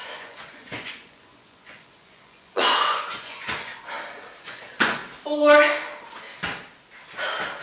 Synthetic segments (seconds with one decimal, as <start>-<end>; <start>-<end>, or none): 0.0-3.7; 4.4-5.0